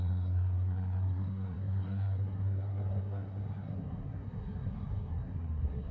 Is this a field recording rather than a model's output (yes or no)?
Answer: no